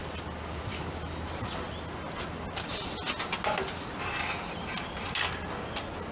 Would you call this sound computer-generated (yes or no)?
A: no